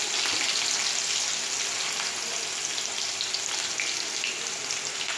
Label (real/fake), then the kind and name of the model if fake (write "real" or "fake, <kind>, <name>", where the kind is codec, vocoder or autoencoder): real